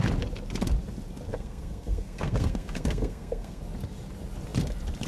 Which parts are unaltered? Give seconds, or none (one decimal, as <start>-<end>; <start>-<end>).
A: 0.0-1.3; 3.6-5.1